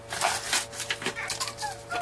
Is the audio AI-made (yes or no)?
no